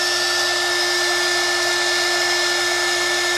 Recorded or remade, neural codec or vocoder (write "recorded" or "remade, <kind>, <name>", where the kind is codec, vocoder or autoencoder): recorded